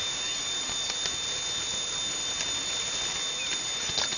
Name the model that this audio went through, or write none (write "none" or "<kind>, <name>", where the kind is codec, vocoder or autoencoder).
none